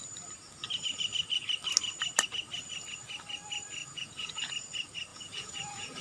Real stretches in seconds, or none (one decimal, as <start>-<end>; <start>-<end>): 0.0-3.8; 4.5-5.1